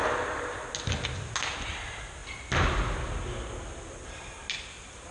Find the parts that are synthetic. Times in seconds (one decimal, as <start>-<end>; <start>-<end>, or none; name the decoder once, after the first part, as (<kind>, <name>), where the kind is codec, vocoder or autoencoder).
none